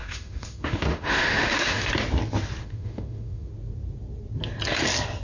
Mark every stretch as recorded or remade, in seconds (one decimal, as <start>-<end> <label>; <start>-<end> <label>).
0.0-1.9 remade; 1.9-2.6 recorded; 2.6-3.5 remade; 3.5-5.2 recorded